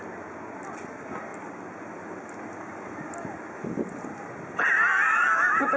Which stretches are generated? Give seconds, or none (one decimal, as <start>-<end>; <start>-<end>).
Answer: none